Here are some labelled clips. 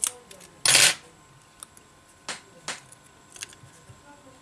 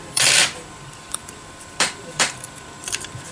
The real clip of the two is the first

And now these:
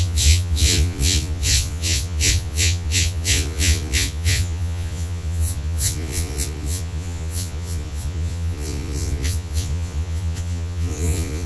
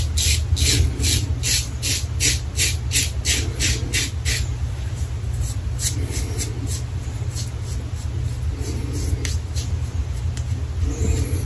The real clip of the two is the second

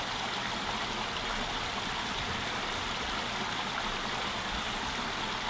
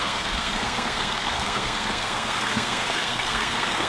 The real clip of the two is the first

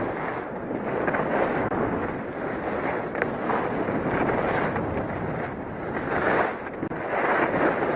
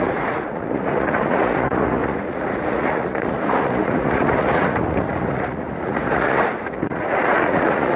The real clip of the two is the first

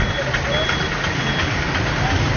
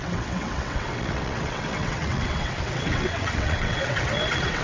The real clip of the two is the first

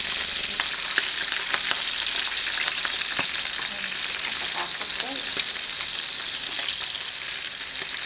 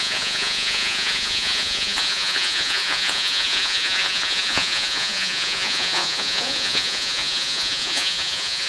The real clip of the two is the first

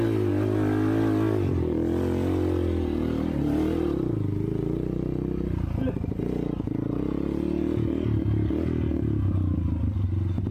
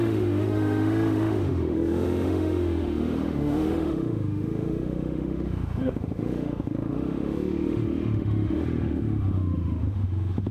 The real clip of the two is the first